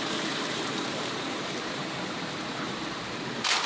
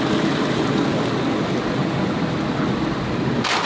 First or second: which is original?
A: second